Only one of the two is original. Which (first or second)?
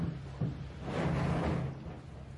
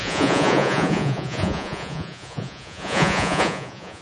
first